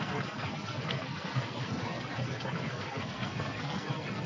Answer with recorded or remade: remade